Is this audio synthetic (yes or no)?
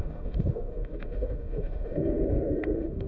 yes